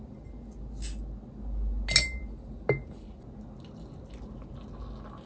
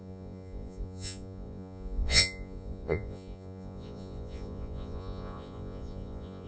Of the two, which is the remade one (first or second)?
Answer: second